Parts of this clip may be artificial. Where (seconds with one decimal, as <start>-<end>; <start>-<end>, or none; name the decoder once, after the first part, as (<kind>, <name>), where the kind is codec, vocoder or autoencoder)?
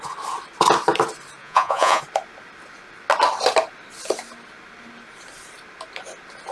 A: 1.4-2.0 (vocoder, Vocos)